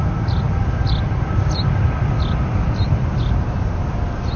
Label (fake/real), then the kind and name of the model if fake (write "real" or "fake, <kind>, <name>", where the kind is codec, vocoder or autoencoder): real